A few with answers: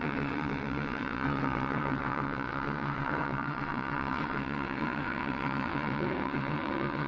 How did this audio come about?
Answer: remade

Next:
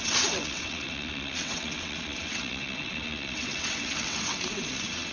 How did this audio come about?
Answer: remade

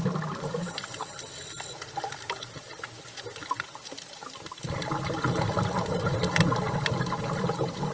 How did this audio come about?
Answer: recorded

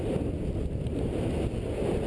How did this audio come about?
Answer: recorded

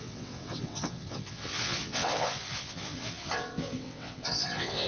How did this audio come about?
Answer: remade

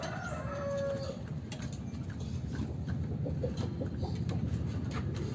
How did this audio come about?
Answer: recorded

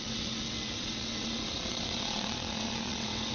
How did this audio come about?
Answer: remade